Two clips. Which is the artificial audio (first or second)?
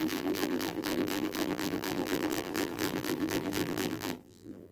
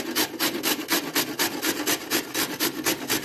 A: first